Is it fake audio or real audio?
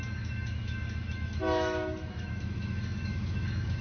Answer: fake